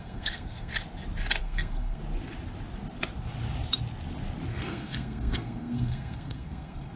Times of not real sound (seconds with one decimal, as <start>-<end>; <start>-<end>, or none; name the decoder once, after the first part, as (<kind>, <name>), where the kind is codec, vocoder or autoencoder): 0.0-0.7 (codec, SNAC); 1.4-2.0; 4.5-7.0